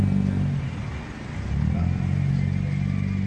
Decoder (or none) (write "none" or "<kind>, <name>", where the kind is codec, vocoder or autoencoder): none